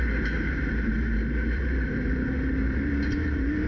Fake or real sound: fake